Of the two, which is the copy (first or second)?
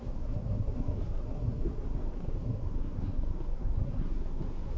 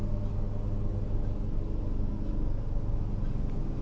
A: first